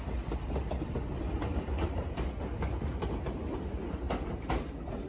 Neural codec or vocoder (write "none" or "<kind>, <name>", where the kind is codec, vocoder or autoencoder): none